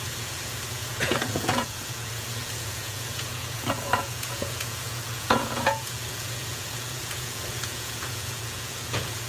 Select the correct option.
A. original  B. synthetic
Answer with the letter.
B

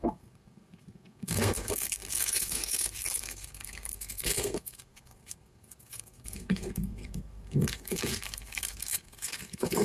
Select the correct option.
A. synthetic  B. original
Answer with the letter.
A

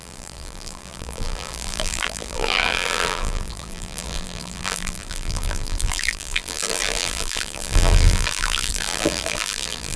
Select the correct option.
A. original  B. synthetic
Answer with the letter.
B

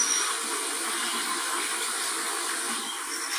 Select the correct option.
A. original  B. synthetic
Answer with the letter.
A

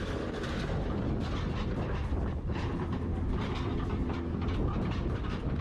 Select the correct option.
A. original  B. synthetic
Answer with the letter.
A